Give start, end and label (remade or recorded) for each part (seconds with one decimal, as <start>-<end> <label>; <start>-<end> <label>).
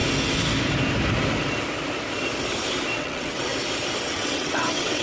0.0-3.0 recorded; 3.0-3.5 remade; 3.5-4.0 recorded; 4.0-5.0 remade